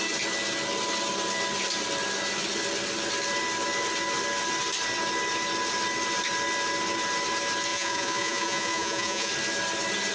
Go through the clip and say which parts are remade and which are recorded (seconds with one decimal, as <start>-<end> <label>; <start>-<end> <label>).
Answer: 0.0-7.7 recorded; 7.7-9.3 remade; 9.3-10.1 recorded